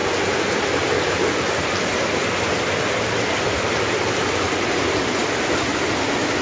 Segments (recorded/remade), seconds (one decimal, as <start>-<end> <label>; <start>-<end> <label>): 0.0-6.4 recorded